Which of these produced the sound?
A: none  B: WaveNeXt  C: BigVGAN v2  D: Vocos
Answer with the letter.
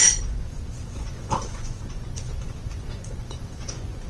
D